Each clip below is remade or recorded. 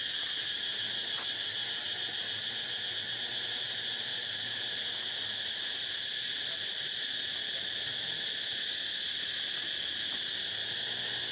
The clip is recorded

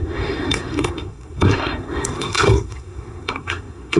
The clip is remade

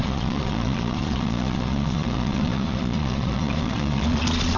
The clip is remade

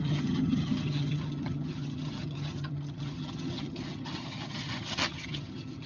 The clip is remade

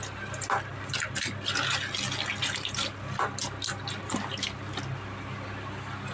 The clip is recorded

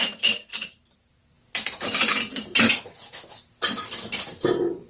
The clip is recorded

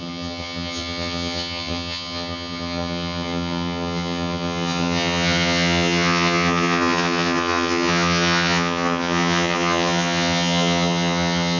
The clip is remade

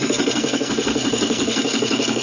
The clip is remade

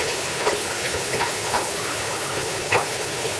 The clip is remade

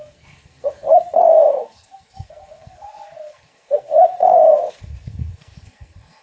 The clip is remade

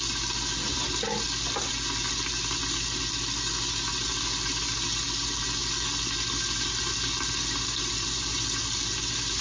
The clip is recorded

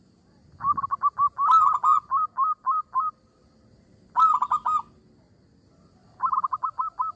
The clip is recorded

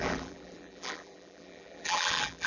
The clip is remade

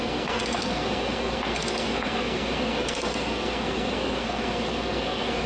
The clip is remade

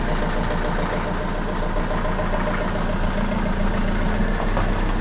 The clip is recorded